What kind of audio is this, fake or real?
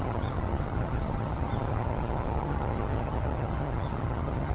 fake